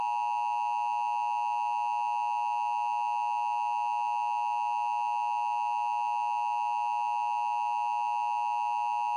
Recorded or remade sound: recorded